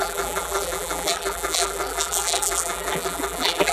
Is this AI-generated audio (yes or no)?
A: yes